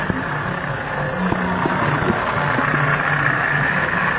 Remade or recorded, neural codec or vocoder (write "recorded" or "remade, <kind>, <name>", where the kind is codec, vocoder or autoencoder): recorded